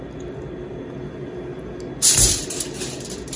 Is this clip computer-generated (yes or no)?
no